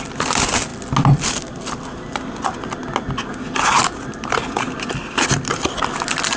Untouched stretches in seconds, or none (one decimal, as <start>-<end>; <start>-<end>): 0.0-6.4